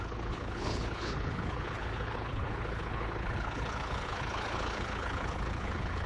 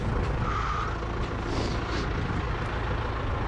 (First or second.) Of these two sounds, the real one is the second